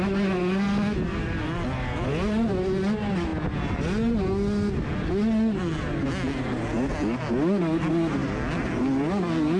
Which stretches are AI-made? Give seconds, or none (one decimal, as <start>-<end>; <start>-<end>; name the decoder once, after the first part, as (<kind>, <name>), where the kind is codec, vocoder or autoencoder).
none

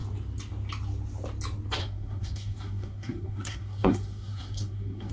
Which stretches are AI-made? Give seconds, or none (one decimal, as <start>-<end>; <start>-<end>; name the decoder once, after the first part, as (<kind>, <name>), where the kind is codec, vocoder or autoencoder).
1.8-5.1 (codec, SNAC)

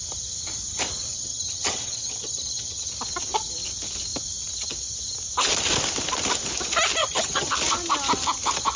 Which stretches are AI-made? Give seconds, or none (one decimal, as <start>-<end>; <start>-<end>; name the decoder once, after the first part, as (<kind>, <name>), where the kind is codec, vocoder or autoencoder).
1.1-2.9 (vocoder, HiFi-GAN); 7.0-7.5

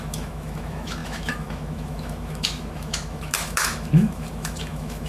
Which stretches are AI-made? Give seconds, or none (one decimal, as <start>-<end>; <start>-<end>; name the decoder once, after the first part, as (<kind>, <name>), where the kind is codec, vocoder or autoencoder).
0.0-5.1 (autoencoder, DAC-VAE)

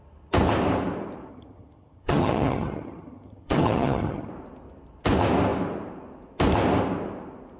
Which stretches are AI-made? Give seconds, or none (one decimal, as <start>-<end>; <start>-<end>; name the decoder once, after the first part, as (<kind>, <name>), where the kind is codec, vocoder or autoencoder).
1.3-4.3 (vocoder, HiFi-GAN)

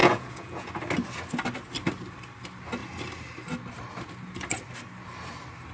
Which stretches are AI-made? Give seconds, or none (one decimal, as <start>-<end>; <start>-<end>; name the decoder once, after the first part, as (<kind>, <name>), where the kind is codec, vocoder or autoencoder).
0.0-0.7 (vocoder, Vocos)

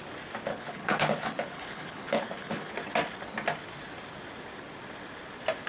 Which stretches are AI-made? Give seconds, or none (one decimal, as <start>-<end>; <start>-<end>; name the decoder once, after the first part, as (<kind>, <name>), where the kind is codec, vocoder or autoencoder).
0.5-2.7 (codec, HILCodec)